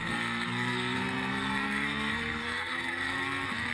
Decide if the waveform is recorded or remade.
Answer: remade